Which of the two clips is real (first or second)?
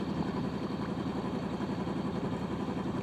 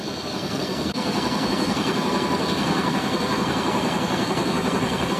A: first